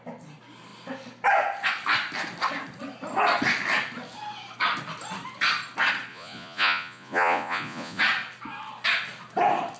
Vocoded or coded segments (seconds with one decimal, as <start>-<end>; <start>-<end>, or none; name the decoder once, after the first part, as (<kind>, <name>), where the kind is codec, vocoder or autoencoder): 6.1-8.0 (vocoder, Vocos)